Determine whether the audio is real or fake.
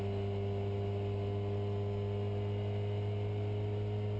real